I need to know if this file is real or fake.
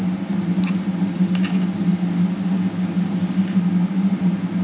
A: real